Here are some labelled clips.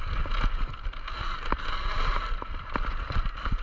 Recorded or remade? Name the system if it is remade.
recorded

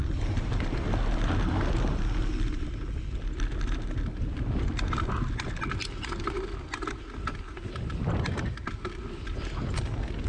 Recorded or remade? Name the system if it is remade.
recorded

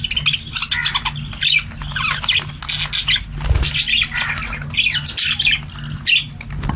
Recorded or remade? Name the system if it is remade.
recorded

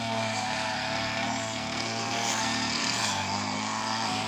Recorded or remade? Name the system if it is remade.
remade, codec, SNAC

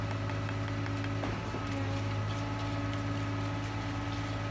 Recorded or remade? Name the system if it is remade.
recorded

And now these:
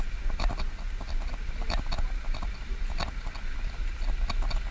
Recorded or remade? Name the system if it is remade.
recorded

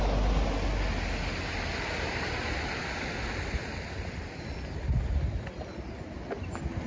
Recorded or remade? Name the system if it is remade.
recorded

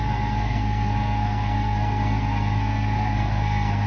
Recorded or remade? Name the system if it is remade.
remade, codec, SNAC